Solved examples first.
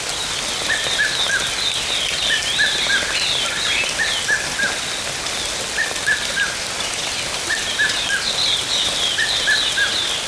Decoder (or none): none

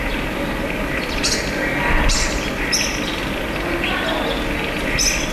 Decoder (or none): none